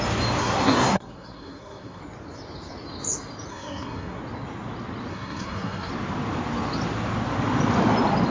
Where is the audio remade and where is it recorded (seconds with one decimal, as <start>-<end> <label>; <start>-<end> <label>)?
0.0-0.4 recorded; 0.4-2.0 remade; 2.0-3.5 recorded; 3.5-4.2 remade; 4.2-5.1 recorded; 5.1-5.9 remade; 5.9-8.3 recorded